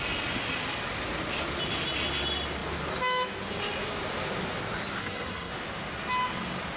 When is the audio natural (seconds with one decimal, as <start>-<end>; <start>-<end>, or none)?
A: 0.0-5.0; 5.5-6.8